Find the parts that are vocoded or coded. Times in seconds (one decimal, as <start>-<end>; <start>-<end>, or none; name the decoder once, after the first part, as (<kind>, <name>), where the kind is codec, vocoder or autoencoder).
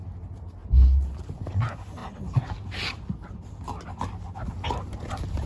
0.6-1.4 (vocoder, BigVGAN v2)